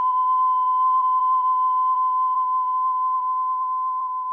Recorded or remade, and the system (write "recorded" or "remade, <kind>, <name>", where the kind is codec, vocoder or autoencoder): remade, vocoder, BigVGAN v2